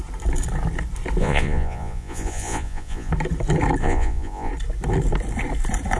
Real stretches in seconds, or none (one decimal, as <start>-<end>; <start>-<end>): 0.0-1.2; 3.1-3.8; 4.5-6.0